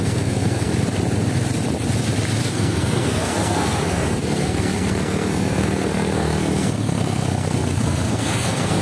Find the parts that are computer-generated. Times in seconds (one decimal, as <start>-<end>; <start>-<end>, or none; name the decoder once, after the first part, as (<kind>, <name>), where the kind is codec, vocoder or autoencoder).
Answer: 0.0-0.7 (codec, SNAC); 2.4-8.8